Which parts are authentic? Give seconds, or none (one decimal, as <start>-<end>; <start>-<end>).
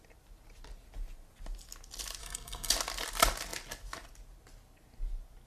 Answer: 0.0-2.2; 2.7-5.5